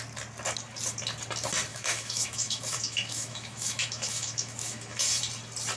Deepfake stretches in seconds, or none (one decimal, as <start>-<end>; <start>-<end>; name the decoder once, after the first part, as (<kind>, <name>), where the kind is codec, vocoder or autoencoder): 1.7-5.2 (autoencoder, DAC-VAE)

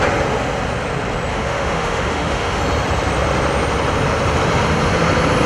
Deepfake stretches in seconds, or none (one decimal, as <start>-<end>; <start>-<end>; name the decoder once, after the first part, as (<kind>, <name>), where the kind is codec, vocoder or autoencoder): 1.3-2.6 (autoencoder, DAC-VAE)

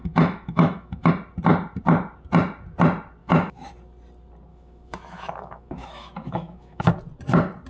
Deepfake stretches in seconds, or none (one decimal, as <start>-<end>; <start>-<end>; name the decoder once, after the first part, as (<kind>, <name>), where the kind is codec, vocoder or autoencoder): 0.0-1.1 (autoencoder, DAC-VAE); 3.2-3.7; 4.5-6.9